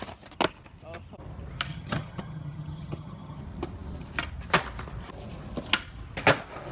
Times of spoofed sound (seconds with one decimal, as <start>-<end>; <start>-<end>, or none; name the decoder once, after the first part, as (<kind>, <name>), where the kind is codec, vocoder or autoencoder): 1.7-3.4 (vocoder, HiFi-GAN)